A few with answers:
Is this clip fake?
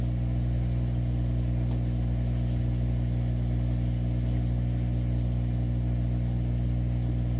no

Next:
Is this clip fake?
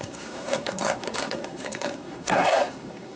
yes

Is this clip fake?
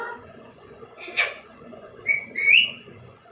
yes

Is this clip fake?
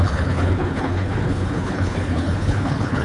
yes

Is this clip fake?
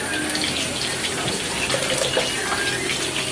no